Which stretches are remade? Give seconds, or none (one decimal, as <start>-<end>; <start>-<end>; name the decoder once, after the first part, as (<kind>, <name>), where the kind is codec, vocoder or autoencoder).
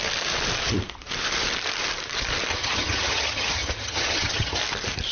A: 2.5-4.6 (vocoder, HiFi-GAN)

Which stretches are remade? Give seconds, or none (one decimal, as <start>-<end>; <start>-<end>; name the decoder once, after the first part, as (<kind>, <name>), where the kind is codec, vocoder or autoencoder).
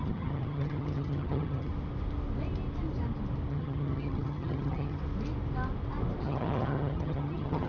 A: 0.0-1.7 (vocoder, HiFi-GAN); 3.5-5.0; 6.2-7.7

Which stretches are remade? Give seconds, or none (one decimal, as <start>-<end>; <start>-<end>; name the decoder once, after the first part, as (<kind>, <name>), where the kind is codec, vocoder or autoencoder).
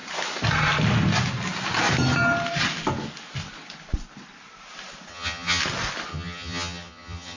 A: 5.1-5.6 (vocoder, HiFi-GAN); 6.1-7.4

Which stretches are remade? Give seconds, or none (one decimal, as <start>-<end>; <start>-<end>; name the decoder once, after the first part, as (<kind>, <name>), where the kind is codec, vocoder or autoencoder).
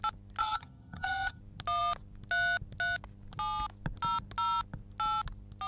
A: 0.4-1.4 (vocoder, HiFi-GAN)